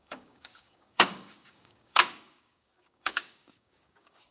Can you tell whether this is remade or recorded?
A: remade